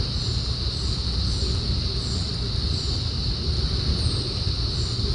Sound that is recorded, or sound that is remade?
recorded